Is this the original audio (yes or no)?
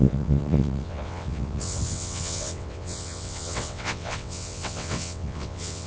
no